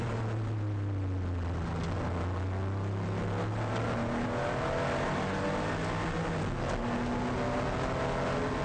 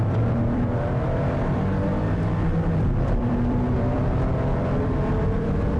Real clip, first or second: first